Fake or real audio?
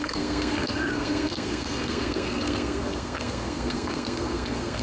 fake